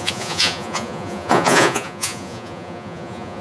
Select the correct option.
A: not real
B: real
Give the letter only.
A